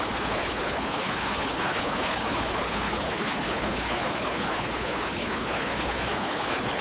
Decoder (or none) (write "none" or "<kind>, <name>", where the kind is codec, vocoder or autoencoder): codec, HILCodec